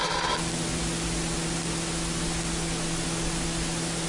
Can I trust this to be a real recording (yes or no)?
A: yes